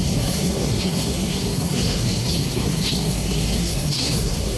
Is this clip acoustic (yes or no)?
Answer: no